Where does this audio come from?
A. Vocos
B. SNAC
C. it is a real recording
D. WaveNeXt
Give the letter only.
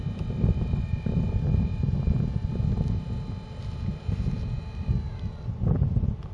C